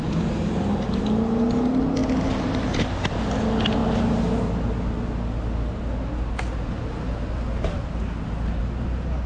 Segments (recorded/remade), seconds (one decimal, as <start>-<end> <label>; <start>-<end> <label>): 0.0-9.3 recorded